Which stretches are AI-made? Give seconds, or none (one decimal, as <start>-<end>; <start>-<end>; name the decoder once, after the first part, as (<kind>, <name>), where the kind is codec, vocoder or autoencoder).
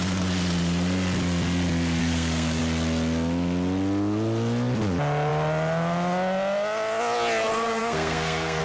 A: 2.0-2.6 (codec, SNAC); 7.8-8.6